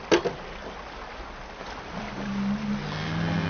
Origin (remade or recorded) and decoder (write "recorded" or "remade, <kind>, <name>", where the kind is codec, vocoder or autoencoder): recorded